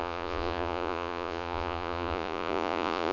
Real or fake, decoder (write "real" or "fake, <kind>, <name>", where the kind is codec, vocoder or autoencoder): fake, vocoder, Vocos